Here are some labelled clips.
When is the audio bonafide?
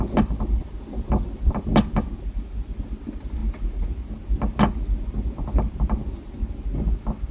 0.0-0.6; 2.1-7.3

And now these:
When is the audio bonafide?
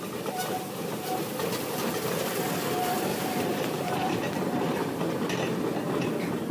0.0-3.1; 4.3-6.5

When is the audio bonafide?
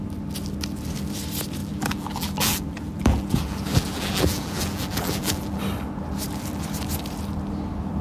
0.0-1.6; 5.6-8.0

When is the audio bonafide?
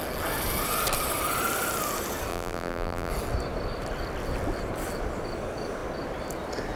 0.0-2.3; 3.1-6.8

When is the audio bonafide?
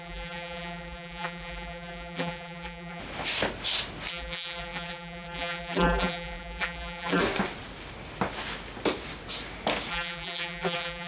3.0-4.1; 7.2-9.9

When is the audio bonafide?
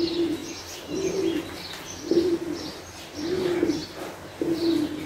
0.0-3.8; 4.3-5.1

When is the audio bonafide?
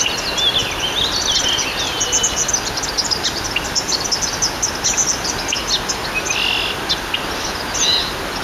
0.0-8.4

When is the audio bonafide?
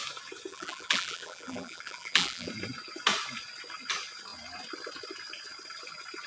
0.0-0.5; 2.5-6.3